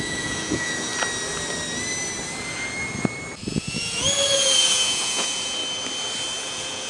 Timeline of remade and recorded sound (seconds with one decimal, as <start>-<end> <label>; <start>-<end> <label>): 0.0-0.9 remade; 0.9-3.5 recorded; 3.5-5.6 remade; 5.6-6.4 recorded; 6.4-6.9 remade